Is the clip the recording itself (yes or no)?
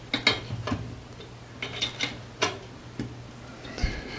yes